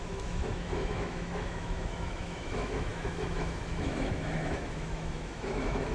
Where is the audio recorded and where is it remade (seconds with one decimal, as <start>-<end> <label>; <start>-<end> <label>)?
0.0-5.9 remade